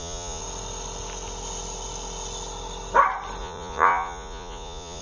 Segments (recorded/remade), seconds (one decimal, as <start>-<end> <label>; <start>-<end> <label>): 0.0-0.4 remade; 0.4-3.4 recorded; 3.4-5.0 remade

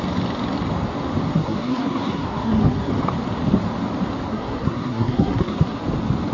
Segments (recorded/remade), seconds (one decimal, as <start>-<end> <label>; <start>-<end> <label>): 0.0-1.3 recorded; 1.3-2.9 remade; 2.9-4.3 recorded; 4.3-5.8 remade; 5.8-6.3 recorded

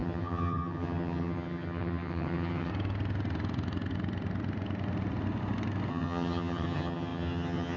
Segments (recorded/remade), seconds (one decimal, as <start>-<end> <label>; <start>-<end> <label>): 0.0-2.7 remade; 2.7-5.9 recorded; 5.9-7.8 remade

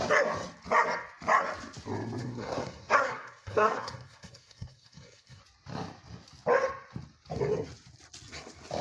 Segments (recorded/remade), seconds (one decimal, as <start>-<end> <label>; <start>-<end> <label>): 0.0-2.2 recorded; 2.2-5.4 remade; 5.4-8.8 recorded